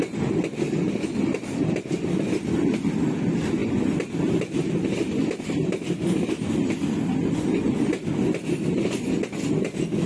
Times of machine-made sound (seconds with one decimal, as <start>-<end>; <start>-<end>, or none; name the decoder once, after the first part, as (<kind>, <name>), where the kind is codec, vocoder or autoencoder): none

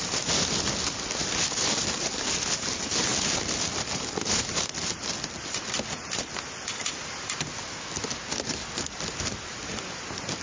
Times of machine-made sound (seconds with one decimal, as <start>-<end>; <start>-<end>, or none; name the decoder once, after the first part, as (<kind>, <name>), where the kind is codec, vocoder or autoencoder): none